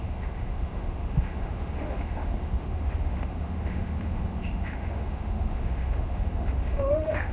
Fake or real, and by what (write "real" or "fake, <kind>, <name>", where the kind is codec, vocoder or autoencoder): fake, autoencoder, DAC-VAE